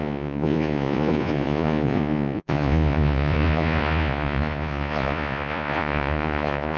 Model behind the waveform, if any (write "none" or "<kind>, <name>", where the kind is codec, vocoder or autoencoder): vocoder, Vocos